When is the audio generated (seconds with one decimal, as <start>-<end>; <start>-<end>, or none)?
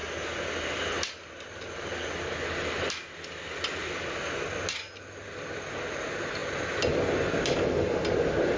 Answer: none